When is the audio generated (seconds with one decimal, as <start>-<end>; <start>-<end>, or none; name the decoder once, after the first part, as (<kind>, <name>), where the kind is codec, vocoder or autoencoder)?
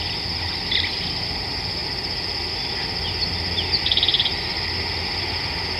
none